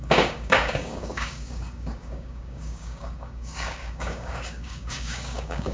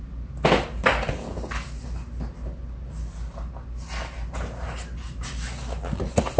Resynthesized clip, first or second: first